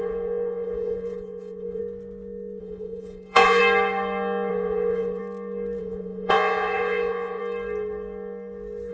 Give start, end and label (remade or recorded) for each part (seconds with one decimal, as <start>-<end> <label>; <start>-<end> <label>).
0.0-1.8 remade; 1.8-2.6 recorded; 2.6-3.6 remade; 3.6-4.5 recorded; 4.5-5.2 remade; 5.2-5.8 recorded; 5.8-7.4 remade; 7.4-8.9 recorded